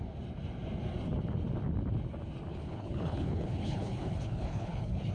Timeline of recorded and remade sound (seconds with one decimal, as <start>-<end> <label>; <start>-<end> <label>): 0.0-2.5 recorded; 2.5-5.1 remade